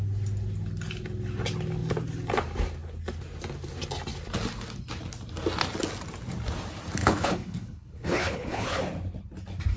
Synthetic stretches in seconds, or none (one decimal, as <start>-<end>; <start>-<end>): 7.0-8.8

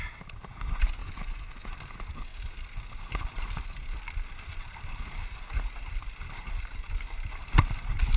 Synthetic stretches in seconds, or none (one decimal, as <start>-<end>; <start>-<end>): 1.0-1.7

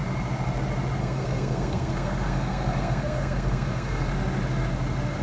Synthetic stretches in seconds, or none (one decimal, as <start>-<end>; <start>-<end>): 1.0-4.1